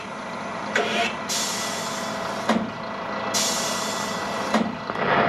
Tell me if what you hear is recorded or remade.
recorded